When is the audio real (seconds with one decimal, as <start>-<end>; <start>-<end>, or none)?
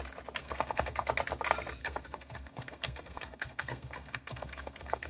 0.0-0.4; 1.1-1.8